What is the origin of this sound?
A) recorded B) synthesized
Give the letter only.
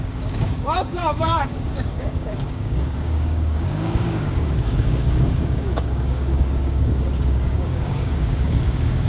B